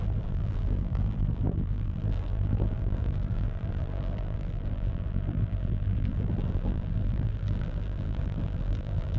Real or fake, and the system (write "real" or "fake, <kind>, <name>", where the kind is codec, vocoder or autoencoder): fake, vocoder, BigVGAN v2